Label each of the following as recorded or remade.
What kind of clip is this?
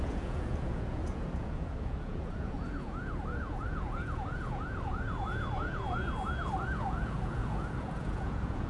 remade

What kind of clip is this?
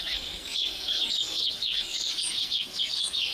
remade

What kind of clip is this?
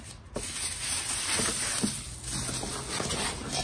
recorded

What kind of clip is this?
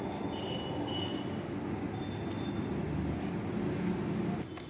recorded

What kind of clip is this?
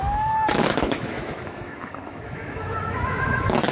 remade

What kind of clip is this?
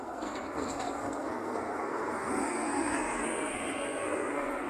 remade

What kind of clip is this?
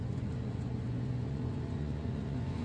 remade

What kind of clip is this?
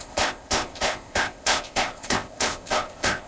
remade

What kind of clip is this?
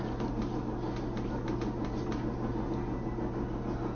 recorded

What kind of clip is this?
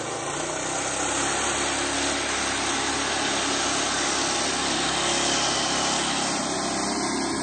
recorded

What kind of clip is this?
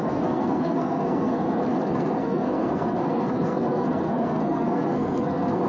remade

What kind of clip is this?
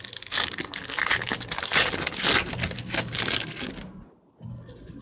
recorded